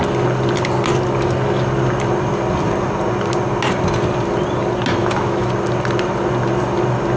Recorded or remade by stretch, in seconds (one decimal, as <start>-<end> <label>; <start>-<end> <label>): 0.0-5.0 recorded; 5.0-5.5 remade; 5.5-7.2 recorded